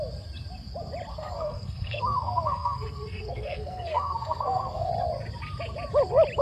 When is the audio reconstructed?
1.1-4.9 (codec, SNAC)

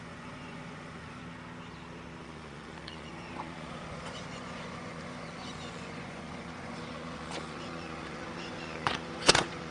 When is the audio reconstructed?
0.0-1.2 (vocoder, Vocos); 2.2-9.7

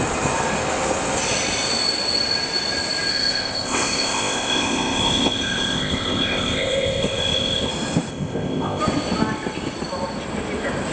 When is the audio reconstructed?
3.1-7.7 (codec, ZipCodec); 8.1-8.8

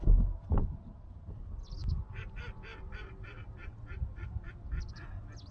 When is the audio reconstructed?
none

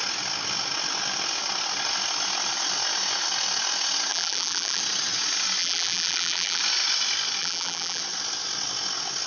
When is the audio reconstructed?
4.1-4.8 (vocoder, BigVGAN v2); 5.6-6.6; 7.4-8.0